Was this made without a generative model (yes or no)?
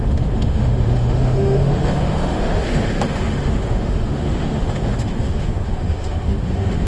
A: no